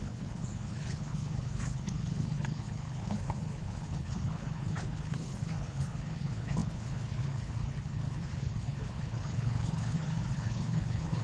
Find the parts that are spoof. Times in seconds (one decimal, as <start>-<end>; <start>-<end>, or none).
0.0-11.2